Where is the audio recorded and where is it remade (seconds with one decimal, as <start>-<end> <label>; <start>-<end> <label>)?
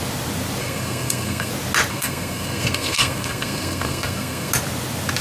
0.0-0.6 recorded; 0.6-1.5 remade; 1.5-1.9 recorded; 1.9-4.5 remade; 4.5-5.2 recorded